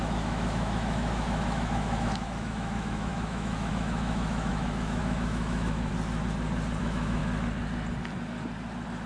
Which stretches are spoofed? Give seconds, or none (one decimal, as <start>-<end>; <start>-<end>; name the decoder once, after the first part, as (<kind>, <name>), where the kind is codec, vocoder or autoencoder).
0.0-5.9 (autoencoder, DAC-VAE); 6.8-7.2